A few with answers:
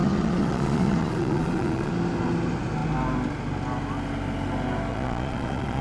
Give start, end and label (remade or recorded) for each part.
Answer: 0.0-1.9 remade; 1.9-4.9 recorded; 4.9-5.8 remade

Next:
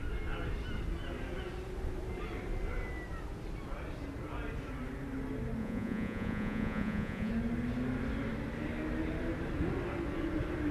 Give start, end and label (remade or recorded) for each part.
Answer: 0.0-5.6 recorded; 5.6-7.3 remade; 7.3-10.7 recorded